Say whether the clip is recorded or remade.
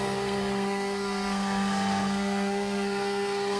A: remade